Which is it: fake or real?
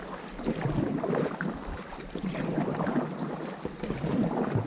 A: real